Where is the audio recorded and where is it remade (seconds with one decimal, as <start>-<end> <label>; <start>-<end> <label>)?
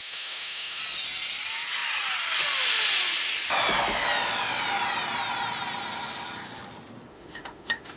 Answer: 0.0-0.8 remade; 0.8-7.1 recorded; 7.1-8.0 remade